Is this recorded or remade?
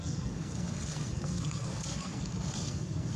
remade